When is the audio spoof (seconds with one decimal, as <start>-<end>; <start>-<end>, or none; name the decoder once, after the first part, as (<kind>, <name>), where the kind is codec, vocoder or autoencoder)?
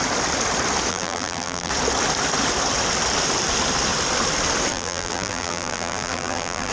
0.9-1.7 (vocoder, BigVGAN v2); 4.7-6.7